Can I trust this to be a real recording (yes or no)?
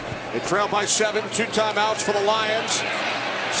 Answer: yes